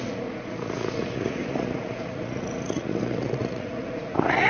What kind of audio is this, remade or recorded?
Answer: remade